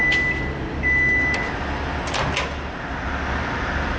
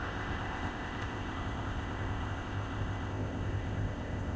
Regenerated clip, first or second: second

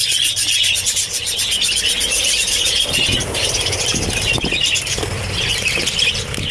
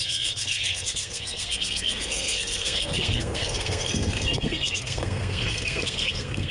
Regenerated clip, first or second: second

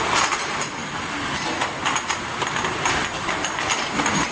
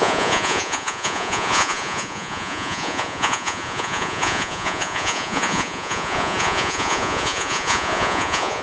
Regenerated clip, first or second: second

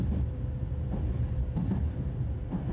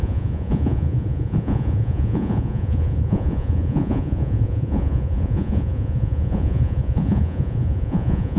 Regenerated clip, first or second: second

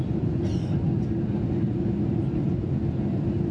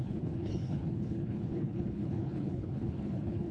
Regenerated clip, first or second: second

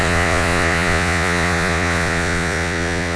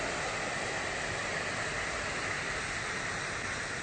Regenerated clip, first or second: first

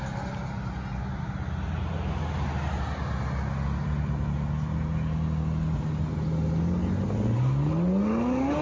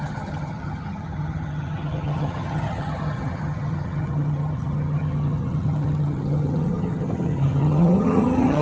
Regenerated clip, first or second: second